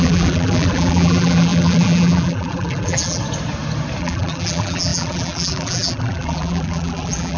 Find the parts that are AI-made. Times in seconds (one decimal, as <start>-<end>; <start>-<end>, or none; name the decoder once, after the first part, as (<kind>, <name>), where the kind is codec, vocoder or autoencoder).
0.0-3.2 (vocoder, BigVGAN v2); 4.0-7.4